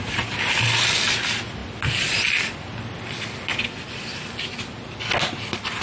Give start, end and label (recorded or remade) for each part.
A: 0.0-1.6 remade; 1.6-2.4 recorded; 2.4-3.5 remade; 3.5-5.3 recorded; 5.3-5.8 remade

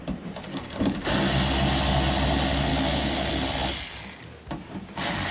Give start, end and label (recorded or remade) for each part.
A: 0.0-0.5 recorded; 0.5-1.1 remade; 1.1-2.7 recorded; 2.7-3.3 remade; 3.3-5.3 recorded

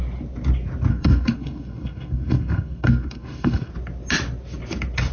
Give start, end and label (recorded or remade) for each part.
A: 0.0-0.9 recorded; 0.9-3.7 remade; 3.7-5.1 recorded

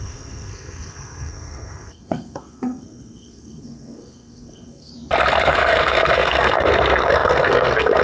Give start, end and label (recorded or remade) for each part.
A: 0.0-4.9 remade; 4.9-5.4 recorded; 5.4-8.0 remade

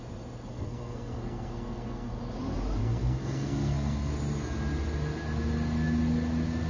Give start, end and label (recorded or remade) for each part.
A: 0.0-0.5 recorded; 0.5-2.2 remade; 2.2-2.8 recorded; 2.8-4.1 remade; 4.1-6.7 recorded

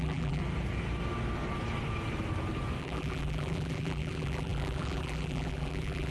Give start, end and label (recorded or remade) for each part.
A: 0.0-0.4 remade; 0.4-2.8 recorded; 2.8-6.1 remade

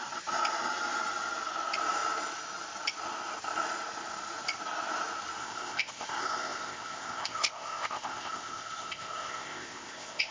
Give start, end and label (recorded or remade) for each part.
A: 0.0-5.4 recorded; 5.4-10.3 remade

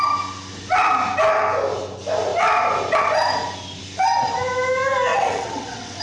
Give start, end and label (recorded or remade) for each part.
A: 0.0-5.1 recorded; 5.1-6.0 remade